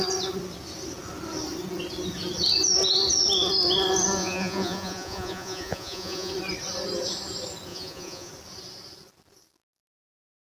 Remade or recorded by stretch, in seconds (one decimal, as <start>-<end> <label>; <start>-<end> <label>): 0.0-4.2 recorded; 4.2-6.3 remade; 6.3-7.7 recorded; 7.7-8.3 remade; 8.3-10.5 recorded